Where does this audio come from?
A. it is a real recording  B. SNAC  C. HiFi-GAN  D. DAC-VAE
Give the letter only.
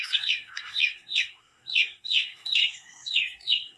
B